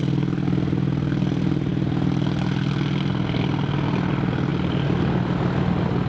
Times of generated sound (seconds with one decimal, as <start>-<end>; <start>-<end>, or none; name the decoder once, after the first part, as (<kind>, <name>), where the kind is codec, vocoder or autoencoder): none